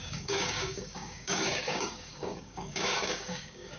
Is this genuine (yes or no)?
no